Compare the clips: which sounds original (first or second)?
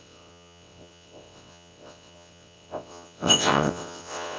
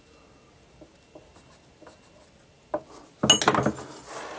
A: second